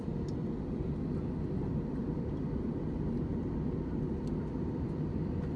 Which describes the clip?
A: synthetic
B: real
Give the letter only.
B